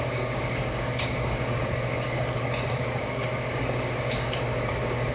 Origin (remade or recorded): remade